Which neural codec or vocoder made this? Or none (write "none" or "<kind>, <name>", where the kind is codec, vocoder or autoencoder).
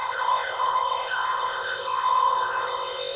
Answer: codec, ZipCodec